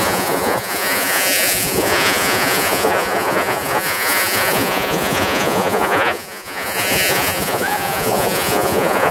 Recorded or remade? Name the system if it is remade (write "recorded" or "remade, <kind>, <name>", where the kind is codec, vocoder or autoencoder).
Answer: remade, vocoder, Vocos